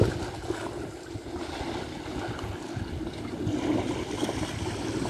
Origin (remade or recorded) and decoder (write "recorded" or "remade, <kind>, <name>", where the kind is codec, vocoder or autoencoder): recorded